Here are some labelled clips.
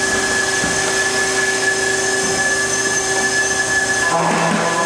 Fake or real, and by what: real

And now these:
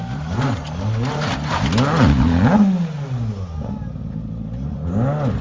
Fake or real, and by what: real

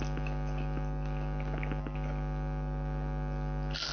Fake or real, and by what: real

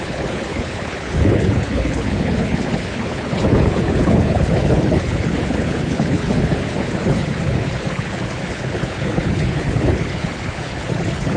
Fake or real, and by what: fake, codec, HILCodec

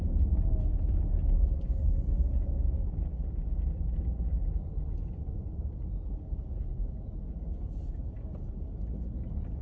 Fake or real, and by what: real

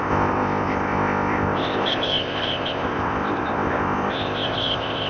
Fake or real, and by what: fake, codec, ZipCodec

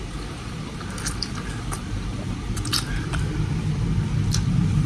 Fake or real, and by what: fake, vocoder, BigVGAN v2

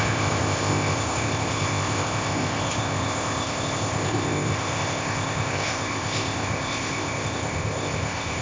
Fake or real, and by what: fake, codec, ZipCodec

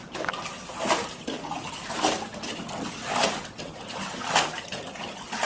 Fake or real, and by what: real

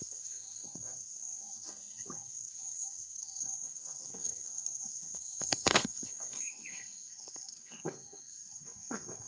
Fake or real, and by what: fake, codec, SNAC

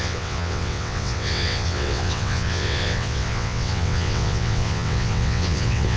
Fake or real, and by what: fake, vocoder, WaveNeXt